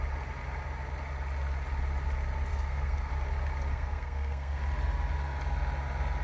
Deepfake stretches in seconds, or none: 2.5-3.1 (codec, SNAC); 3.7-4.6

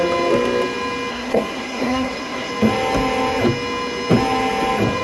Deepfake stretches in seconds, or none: 1.1-2.5 (codec, SNAC)

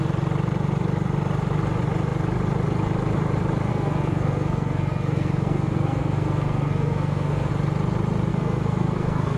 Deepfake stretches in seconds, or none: 3.7-7.5 (codec, SNAC); 8.3-9.4

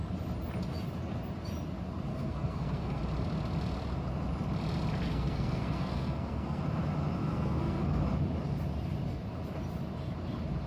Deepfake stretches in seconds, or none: 2.1-3.0 (codec, SNAC); 5.1-6.6; 7.2-8.0

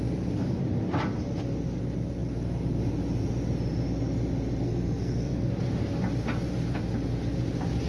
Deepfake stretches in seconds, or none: 4.6-5.5 (codec, SNAC)

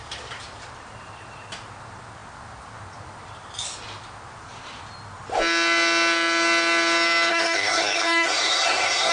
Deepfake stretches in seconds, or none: 7.3-9.1 (codec, SNAC)

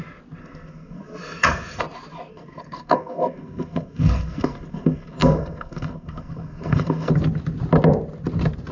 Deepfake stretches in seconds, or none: 0.4-1.8 (codec, SNAC); 2.3-7.1

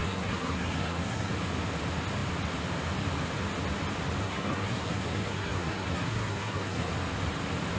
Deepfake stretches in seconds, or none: 0.0-1.3 (codec, SNAC); 4.2-6.9